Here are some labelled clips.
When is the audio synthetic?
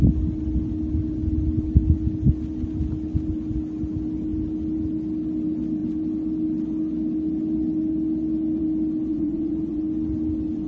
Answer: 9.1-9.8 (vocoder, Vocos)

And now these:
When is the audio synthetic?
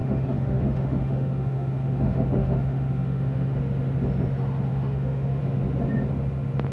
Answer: 0.0-3.6 (autoencoder, DAC-VAE); 4.7-5.4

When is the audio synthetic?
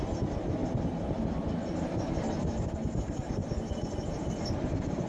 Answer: 0.0-0.6 (vocoder, BigVGAN v2); 1.9-3.4; 4.1-5.1